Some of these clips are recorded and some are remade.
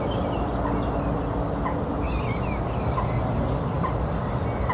recorded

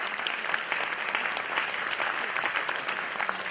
recorded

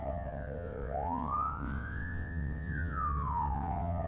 remade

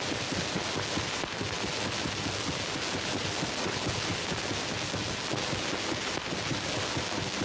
recorded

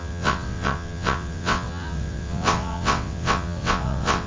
remade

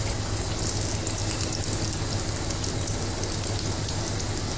recorded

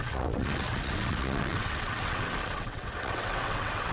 remade